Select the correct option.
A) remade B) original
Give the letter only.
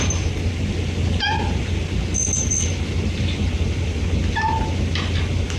B